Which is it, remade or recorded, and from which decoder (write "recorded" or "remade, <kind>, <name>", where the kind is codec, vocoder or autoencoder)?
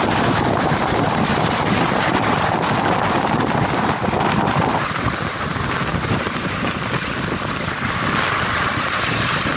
recorded